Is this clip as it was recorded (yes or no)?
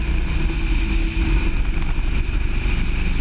yes